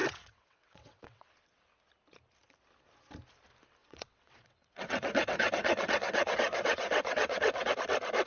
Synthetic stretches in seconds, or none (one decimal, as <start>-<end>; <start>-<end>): 0.0-1.3; 3.8-7.7